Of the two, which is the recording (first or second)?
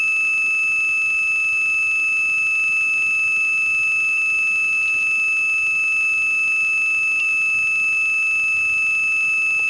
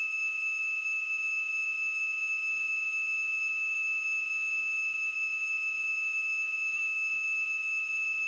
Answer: first